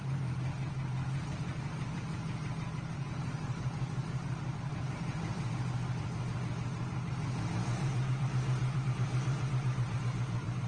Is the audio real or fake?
fake